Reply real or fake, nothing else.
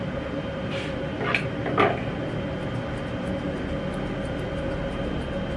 real